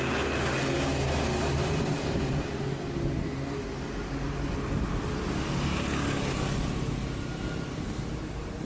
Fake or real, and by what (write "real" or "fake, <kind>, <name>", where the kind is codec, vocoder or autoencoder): real